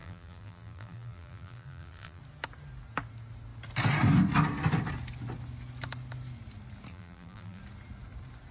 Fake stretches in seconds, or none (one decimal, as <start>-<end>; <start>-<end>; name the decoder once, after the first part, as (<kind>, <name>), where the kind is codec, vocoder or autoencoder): 0.0-2.2 (vocoder, BigVGAN v2); 6.9-7.6